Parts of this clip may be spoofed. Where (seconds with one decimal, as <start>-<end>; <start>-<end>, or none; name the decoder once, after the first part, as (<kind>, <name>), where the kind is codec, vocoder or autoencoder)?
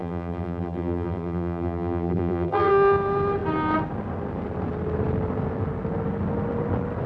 0.0-2.7 (vocoder, BigVGAN v2)